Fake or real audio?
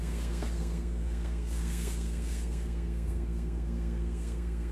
fake